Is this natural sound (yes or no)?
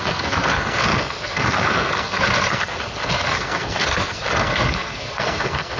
no